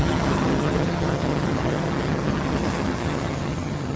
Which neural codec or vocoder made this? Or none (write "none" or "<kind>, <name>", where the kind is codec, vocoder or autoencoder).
vocoder, HiFi-GAN